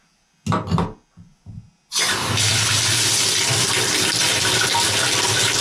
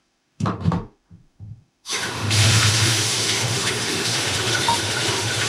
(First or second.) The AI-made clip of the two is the second